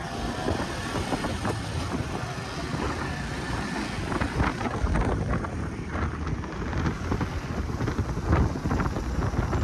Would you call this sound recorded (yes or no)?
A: yes